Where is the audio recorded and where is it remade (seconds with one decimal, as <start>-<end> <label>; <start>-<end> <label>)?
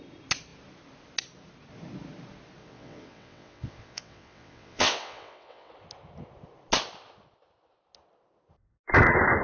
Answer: 0.0-2.6 recorded; 2.6-5.7 remade; 5.7-9.4 recorded